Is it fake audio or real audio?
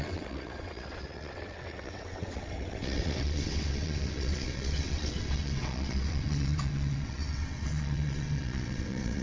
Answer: fake